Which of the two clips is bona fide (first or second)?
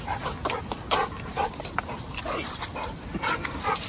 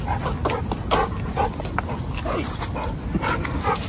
second